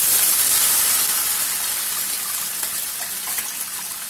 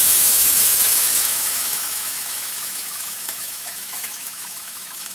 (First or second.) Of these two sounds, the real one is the first